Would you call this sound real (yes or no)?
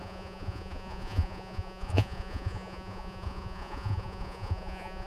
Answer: no